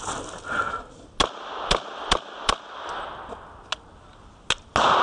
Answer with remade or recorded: recorded